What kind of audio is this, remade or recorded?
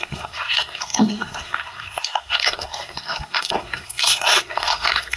remade